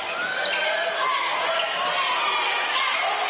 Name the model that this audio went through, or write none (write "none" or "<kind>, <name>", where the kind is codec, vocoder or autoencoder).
none